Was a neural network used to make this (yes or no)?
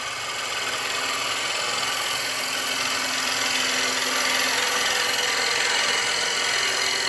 no